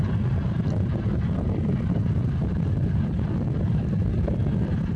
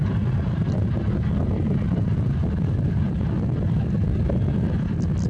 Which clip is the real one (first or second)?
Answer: second